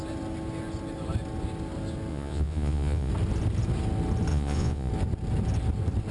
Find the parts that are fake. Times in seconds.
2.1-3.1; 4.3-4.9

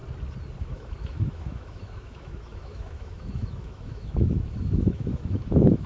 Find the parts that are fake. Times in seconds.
0.6-5.9

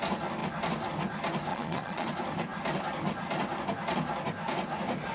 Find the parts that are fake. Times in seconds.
1.5-2.1

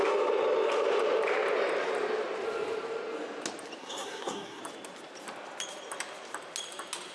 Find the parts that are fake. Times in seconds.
3.8-4.6

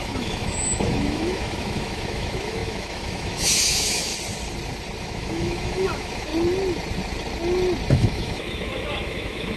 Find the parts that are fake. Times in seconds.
0.0-4.1; 5.0-6.3; 7.9-9.6